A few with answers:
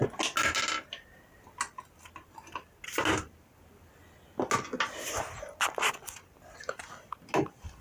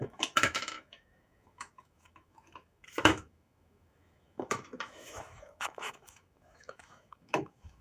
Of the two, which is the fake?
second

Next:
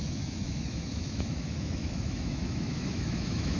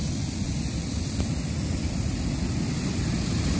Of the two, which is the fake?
first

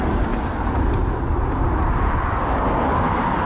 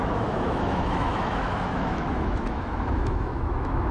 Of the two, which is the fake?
second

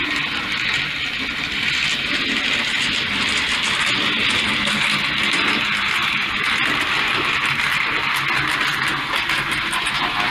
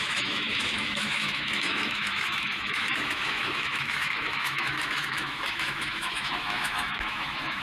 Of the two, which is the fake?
second